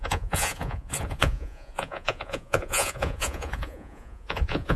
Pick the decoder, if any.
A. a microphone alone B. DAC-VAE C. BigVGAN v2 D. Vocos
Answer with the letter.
D